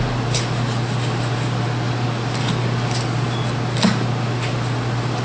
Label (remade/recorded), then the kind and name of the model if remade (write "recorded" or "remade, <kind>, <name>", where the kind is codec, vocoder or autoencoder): recorded